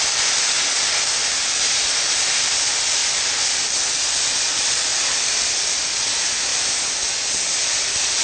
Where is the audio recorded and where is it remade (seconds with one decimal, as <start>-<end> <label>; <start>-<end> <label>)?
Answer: 0.0-1.2 recorded; 1.2-2.6 remade; 2.6-3.0 recorded; 3.0-3.6 remade; 3.6-4.9 recorded; 4.9-5.7 remade; 5.7-6.5 recorded; 6.5-7.1 remade; 7.1-8.2 recorded